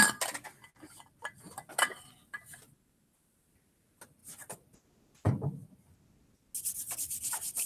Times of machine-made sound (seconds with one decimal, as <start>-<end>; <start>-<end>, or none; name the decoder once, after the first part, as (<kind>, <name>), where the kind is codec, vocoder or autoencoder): none